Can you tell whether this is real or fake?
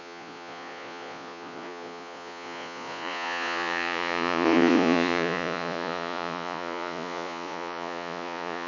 fake